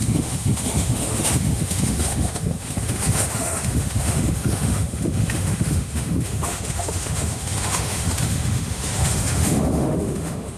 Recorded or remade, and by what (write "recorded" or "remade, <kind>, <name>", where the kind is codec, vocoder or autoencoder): remade, autoencoder, DAC-VAE